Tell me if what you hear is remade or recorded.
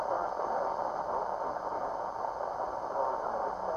recorded